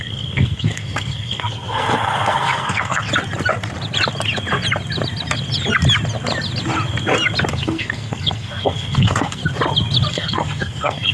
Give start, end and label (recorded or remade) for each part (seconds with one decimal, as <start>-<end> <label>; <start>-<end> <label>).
0.0-3.1 remade; 3.1-7.5 recorded; 7.5-9.4 remade; 9.4-10.1 recorded; 10.1-11.1 remade

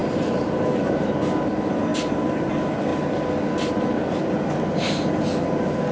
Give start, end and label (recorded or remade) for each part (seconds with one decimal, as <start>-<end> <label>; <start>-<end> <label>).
0.0-1.1 remade; 1.1-5.9 recorded

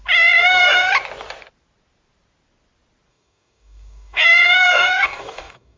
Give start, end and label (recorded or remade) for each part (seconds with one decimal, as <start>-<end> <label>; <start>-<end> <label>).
0.0-0.4 recorded; 0.4-0.9 remade; 0.9-3.1 recorded; 3.1-5.8 remade

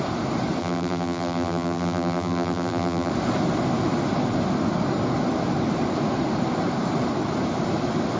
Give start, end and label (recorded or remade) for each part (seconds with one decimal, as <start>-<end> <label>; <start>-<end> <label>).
0.0-0.6 recorded; 0.6-3.1 remade; 3.1-8.2 recorded

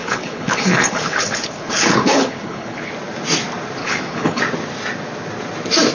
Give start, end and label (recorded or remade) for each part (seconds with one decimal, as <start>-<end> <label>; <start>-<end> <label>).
0.0-2.9 remade; 2.9-3.8 recorded; 3.8-4.4 remade; 4.4-5.9 recorded

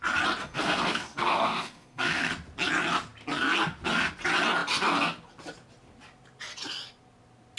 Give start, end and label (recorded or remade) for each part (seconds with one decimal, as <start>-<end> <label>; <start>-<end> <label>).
0.0-0.4 recorded; 0.4-2.3 remade; 2.3-7.6 recorded